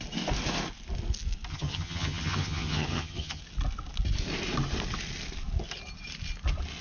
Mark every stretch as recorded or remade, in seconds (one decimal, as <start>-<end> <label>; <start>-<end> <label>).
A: 0.0-1.5 recorded; 1.5-3.4 remade; 3.4-6.8 recorded